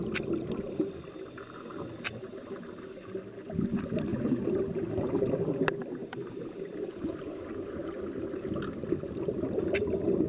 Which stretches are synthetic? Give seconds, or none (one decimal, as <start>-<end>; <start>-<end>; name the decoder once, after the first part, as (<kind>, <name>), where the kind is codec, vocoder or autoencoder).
4.1-5.6 (vocoder, BigVGAN v2); 6.0-8.0